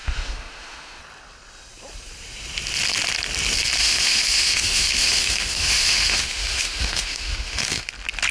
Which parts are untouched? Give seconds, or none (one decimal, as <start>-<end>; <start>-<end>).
1.0-3.8; 7.9-8.3